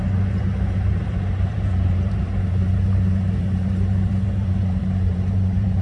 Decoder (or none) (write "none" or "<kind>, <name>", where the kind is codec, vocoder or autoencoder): vocoder, BigVGAN v2